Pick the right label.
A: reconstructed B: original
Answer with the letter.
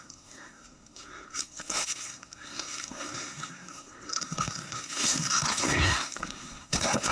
A